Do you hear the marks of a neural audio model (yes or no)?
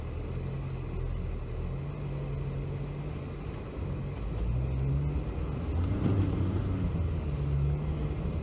no